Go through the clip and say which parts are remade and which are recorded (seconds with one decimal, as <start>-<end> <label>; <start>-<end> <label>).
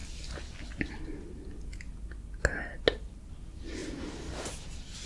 0.0-3.8 recorded; 3.8-5.1 remade